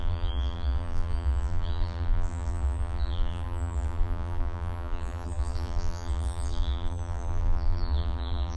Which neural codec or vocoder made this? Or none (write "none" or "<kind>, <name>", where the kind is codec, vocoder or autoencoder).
vocoder, BigVGAN v2